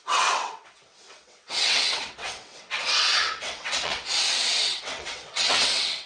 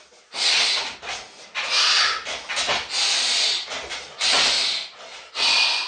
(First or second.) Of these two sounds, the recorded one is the second